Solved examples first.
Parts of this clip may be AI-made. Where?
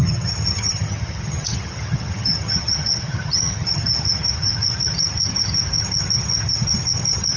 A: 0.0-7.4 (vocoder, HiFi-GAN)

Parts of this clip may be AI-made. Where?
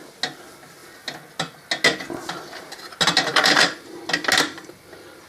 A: 3.3-4.0 (vocoder, BigVGAN v2)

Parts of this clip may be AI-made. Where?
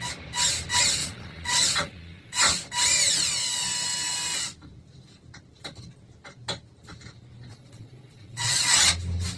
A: 1.0-2.4 (vocoder, Vocos); 7.5-8.8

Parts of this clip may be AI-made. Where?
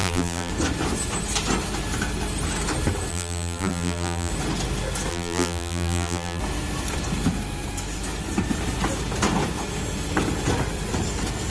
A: 0.0-0.5 (vocoder, BigVGAN v2); 3.1-4.3; 5.1-6.4